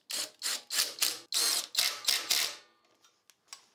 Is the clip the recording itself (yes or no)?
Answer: yes